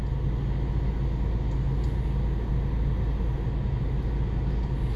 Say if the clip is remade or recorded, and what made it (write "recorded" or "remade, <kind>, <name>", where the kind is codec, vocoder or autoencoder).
recorded